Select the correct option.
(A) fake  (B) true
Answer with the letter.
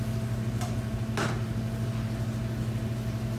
B